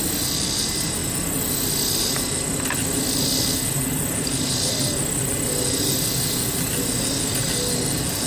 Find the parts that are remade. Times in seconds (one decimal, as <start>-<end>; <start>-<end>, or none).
none